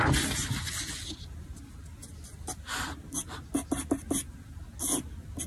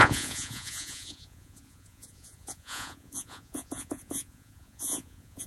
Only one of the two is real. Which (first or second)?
first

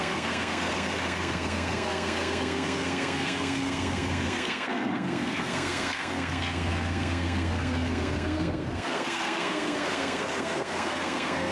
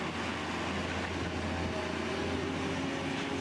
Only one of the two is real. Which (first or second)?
second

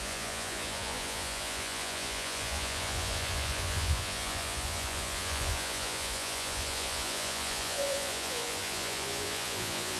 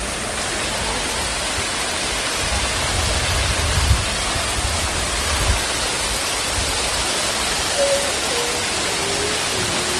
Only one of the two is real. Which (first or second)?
second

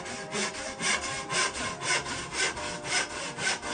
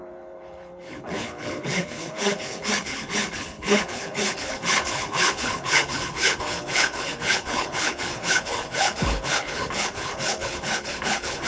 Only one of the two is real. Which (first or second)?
first